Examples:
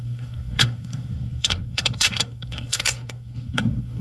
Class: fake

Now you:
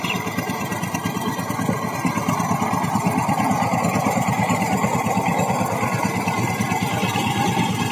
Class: real